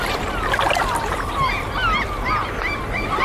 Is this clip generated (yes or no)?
no